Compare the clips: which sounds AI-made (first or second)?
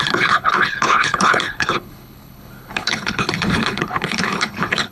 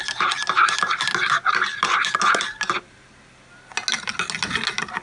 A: first